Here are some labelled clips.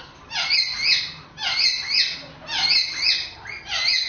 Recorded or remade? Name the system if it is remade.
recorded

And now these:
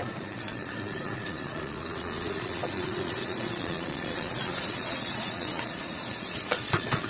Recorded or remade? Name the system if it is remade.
remade, vocoder, Vocos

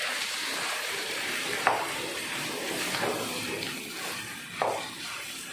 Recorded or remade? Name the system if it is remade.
remade, vocoder, BigVGAN v2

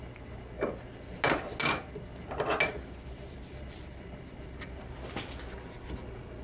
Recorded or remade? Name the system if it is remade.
recorded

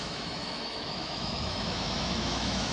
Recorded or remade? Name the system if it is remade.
remade, autoencoder, DAC-VAE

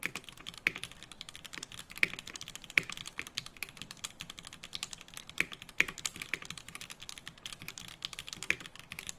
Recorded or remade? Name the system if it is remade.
recorded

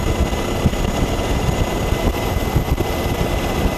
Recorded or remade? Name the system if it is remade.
recorded